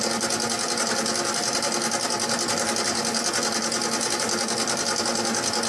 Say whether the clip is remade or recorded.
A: recorded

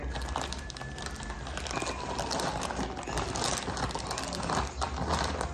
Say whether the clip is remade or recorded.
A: recorded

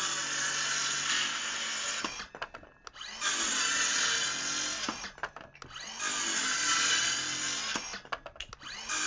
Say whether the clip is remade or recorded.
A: recorded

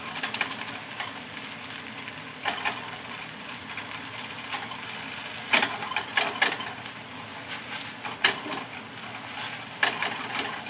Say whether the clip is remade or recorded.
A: recorded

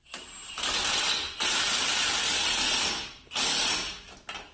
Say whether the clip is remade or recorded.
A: recorded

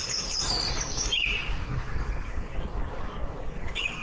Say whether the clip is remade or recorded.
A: remade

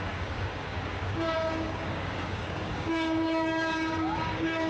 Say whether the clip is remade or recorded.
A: remade